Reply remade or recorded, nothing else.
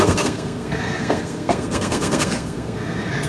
remade